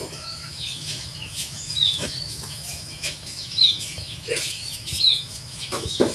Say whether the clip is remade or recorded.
remade